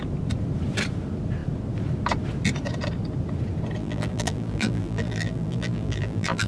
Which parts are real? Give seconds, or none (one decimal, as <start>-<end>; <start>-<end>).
0.0-3.8